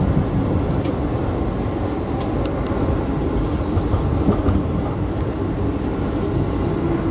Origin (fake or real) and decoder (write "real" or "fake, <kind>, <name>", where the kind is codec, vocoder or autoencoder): real